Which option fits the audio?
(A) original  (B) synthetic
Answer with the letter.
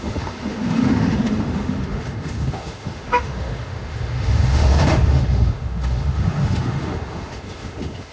B